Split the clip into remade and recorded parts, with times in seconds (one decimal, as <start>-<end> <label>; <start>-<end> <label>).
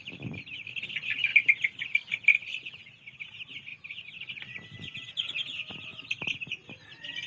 0.0-7.3 recorded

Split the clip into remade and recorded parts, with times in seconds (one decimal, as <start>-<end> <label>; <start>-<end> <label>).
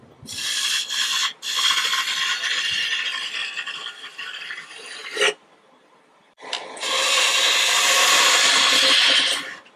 0.0-9.8 recorded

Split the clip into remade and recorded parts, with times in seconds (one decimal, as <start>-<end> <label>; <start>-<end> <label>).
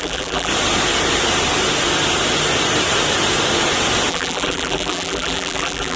0.0-0.5 remade; 0.5-4.1 recorded; 4.1-6.0 remade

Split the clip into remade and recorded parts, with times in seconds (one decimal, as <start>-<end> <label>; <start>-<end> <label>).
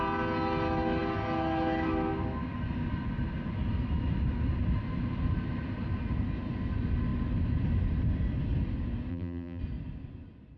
0.0-9.1 recorded; 9.1-9.6 remade; 9.6-10.6 recorded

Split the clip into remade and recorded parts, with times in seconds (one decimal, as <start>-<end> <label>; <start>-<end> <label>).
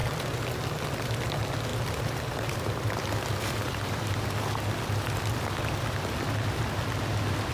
0.0-1.1 remade; 1.1-1.7 recorded; 1.7-4.2 remade; 4.2-7.5 recorded